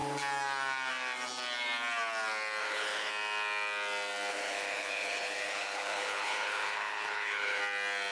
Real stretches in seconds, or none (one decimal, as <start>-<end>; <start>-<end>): 0.0-2.6; 3.1-4.3; 7.6-8.1